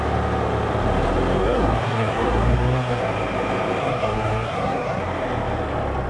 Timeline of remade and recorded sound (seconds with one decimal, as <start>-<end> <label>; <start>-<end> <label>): 0.0-1.4 recorded; 1.4-3.0 remade; 3.0-3.8 recorded; 3.8-5.0 remade; 5.0-6.1 recorded